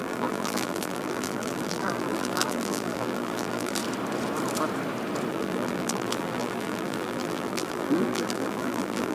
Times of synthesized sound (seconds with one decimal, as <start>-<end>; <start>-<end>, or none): 0.0-3.8; 5.3-9.1